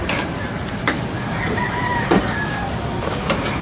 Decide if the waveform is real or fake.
fake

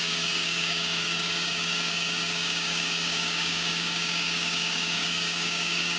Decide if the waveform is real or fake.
fake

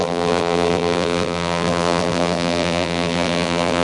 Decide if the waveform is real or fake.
fake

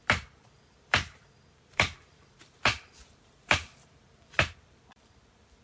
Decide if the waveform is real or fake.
fake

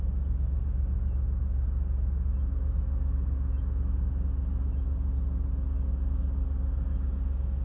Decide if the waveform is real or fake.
real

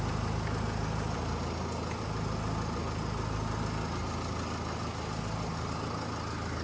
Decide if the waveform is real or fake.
real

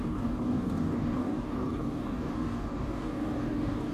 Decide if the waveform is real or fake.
fake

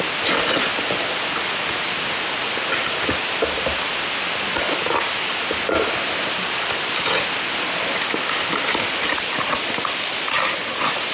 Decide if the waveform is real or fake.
real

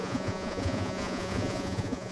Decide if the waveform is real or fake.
fake